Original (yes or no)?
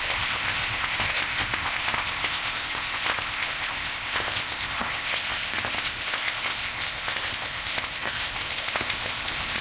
no